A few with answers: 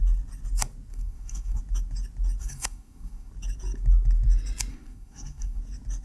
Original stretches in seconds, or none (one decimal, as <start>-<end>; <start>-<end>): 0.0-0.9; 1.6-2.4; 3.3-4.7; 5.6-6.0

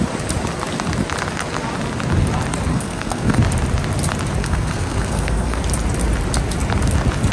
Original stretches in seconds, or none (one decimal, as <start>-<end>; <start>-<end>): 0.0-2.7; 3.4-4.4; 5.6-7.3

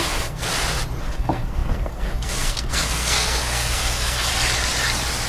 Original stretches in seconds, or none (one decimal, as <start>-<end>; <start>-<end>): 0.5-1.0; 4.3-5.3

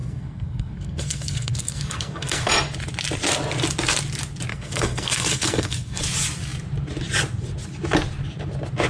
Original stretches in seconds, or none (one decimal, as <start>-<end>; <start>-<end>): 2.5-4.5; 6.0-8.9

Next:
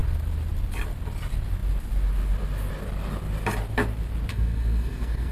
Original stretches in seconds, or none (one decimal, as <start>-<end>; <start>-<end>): 0.0-4.3

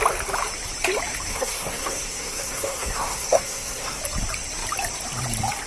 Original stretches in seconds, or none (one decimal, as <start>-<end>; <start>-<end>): 0.0-1.3; 4.0-5.7

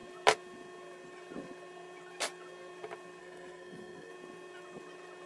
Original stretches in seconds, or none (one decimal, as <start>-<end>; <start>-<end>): 0.0-3.2; 4.1-5.3

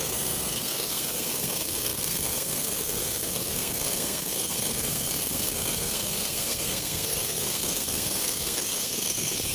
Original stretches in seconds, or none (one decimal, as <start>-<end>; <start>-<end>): none